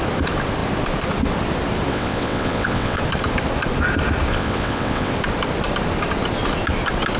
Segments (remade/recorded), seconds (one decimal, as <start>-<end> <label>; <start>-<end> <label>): 0.0-1.9 recorded; 1.9-3.0 remade; 3.0-4.3 recorded; 4.3-5.1 remade; 5.1-7.2 recorded